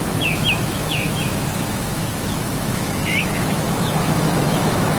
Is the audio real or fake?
fake